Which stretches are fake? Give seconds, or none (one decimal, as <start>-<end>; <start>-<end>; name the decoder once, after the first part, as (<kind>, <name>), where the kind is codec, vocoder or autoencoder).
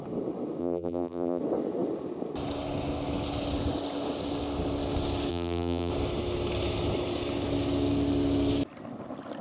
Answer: 0.6-1.4 (vocoder, BigVGAN v2); 5.3-5.9